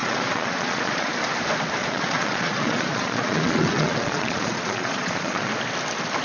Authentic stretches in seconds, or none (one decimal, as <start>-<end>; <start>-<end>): 1.1-1.8; 5.5-6.2